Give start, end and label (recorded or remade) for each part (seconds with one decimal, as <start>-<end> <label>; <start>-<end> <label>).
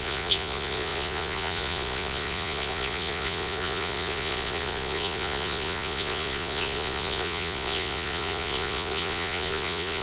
0.0-10.0 remade